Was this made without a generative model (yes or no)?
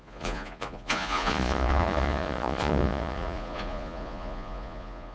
no